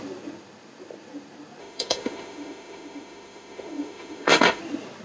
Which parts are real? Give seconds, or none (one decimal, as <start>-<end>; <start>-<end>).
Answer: 0.0-1.6; 4.6-5.0